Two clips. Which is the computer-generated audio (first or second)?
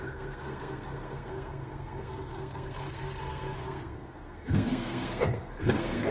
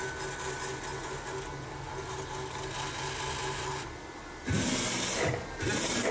first